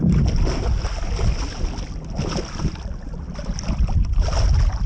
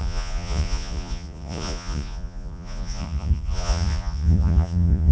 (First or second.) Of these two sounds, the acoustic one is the first